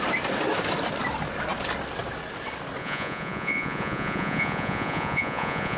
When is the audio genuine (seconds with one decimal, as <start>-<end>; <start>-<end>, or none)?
0.0-2.8